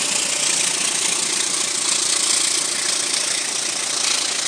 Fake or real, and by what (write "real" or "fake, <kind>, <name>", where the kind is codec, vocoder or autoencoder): real